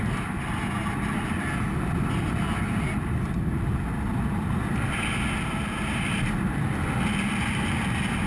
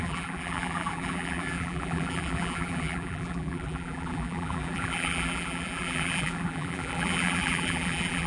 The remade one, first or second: second